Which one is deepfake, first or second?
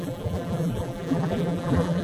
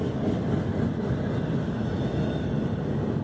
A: first